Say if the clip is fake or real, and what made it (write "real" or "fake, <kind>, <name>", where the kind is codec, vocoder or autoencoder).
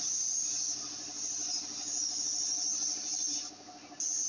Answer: real